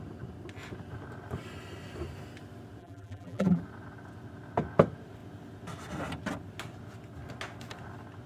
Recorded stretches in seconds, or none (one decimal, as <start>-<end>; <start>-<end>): 0.0-2.8; 3.6-8.3